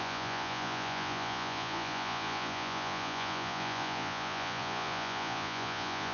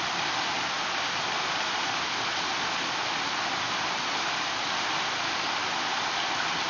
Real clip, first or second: second